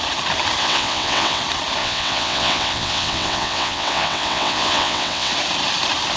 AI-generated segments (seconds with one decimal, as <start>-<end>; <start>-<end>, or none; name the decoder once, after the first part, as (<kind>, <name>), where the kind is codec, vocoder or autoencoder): 0.6-1.4 (vocoder, WaveNeXt); 1.8-5.3